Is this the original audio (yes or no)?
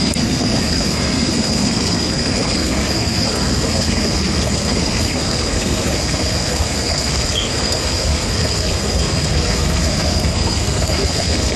no